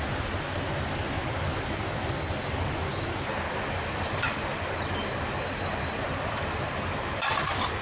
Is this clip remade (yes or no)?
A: no